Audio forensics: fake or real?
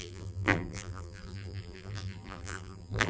fake